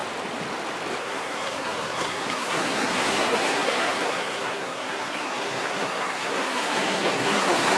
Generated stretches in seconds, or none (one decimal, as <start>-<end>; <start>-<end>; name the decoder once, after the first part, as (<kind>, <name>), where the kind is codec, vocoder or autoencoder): 1.0-7.8 (codec, SNAC)

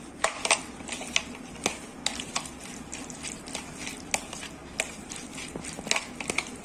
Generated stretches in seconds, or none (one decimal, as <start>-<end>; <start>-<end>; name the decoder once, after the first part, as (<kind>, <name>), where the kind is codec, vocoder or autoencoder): none

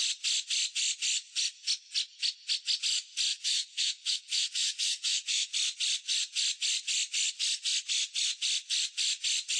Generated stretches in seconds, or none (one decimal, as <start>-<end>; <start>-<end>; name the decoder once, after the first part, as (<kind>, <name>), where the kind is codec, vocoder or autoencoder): 3.3-5.5 (autoencoder, DAC-VAE)